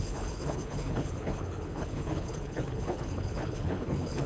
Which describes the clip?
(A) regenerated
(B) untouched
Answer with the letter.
A